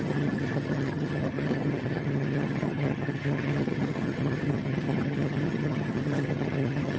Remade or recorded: remade